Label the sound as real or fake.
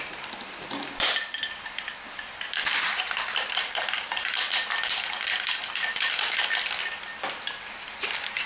fake